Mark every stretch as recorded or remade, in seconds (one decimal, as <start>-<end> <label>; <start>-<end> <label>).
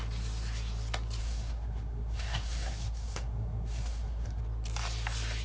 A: 0.0-1.2 recorded; 1.2-4.4 remade; 4.4-5.4 recorded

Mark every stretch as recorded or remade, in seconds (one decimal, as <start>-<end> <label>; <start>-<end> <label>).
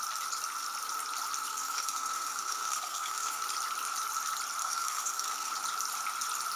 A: 0.0-1.5 recorded; 1.5-3.4 remade; 3.4-4.6 recorded; 4.6-5.5 remade; 5.5-6.6 recorded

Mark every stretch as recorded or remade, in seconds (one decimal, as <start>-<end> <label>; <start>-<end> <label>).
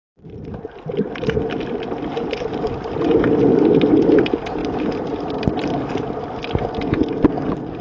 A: 0.0-7.8 recorded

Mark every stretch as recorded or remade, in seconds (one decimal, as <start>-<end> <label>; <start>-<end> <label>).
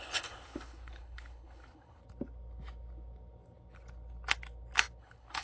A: 0.0-2.0 remade; 2.0-5.0 recorded; 5.0-5.4 remade